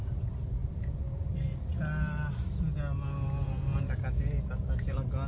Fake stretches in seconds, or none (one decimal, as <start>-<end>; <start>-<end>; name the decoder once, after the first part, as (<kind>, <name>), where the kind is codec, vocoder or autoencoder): 0.0-1.7 (vocoder, BigVGAN v2)

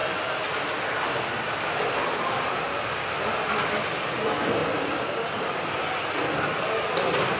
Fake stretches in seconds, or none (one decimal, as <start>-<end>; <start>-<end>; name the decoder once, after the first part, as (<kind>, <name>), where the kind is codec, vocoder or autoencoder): none

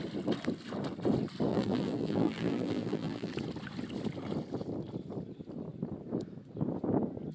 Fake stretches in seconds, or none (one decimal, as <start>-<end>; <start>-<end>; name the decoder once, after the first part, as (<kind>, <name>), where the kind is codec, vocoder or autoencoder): 1.5-3.3 (vocoder, BigVGAN v2)

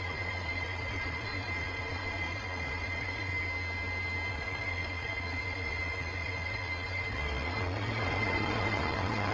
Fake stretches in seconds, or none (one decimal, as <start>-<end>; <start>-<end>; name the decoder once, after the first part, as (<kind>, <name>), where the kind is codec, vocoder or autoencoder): 0.0-3.3 (vocoder, Vocos); 4.3-9.3

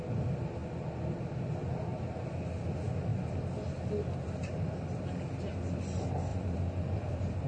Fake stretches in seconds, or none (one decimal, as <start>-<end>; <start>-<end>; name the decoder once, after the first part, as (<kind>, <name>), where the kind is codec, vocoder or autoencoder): 3.1-4.3 (vocoder, BigVGAN v2); 6.3-7.5

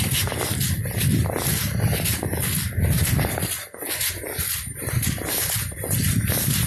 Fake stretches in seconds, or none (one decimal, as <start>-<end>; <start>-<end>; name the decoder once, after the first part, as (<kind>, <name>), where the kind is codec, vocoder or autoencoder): none